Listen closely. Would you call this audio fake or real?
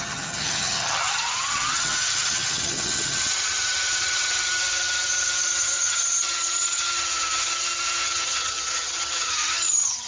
fake